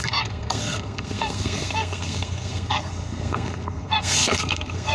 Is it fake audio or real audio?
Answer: fake